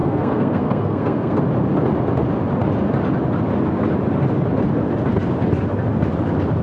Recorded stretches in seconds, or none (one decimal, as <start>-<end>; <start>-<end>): 1.4-6.6